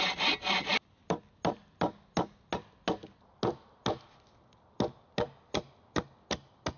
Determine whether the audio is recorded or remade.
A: recorded